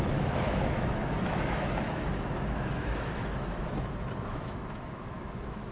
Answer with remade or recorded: remade